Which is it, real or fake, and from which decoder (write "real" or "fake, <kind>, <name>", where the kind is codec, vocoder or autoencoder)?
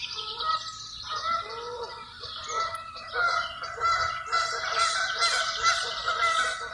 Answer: real